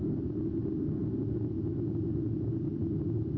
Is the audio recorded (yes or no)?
yes